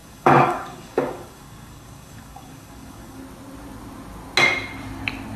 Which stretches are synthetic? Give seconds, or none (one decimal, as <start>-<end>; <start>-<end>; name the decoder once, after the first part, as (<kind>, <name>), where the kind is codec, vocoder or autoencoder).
0.0-3.2 (codec, DAC)